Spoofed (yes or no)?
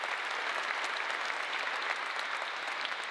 no